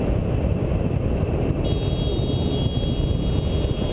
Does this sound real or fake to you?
real